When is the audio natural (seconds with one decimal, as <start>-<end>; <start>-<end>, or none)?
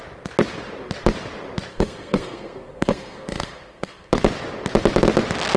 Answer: 0.0-1.7; 4.1-5.6